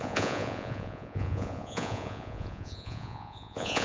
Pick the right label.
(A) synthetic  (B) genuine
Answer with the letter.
A